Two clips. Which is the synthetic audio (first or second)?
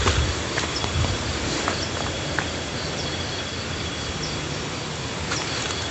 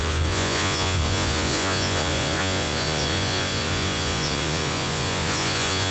second